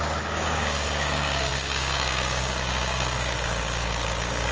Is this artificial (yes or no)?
yes